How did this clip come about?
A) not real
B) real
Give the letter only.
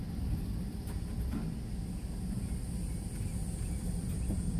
B